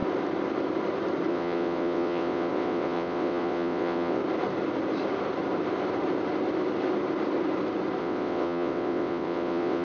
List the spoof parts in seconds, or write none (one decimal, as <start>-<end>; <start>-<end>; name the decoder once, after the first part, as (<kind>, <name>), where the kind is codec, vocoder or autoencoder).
1.3-4.2 (vocoder, WaveNeXt); 8.0-9.8